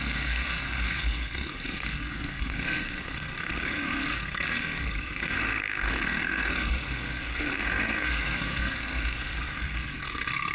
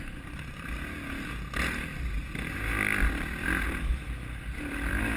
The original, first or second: second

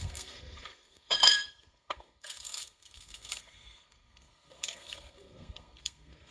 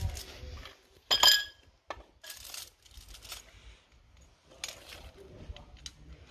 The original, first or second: second